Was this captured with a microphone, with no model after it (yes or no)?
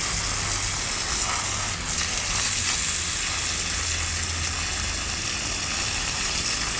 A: yes